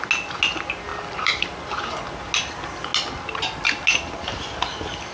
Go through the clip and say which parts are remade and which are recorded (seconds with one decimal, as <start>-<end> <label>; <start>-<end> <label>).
0.0-0.9 recorded; 0.9-1.8 remade; 1.8-5.1 recorded